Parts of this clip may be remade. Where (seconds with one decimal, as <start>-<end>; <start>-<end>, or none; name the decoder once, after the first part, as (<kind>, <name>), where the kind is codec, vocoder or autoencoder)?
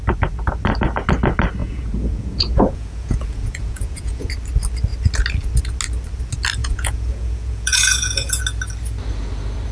1.6-4.3 (vocoder, Vocos); 6.6-8.4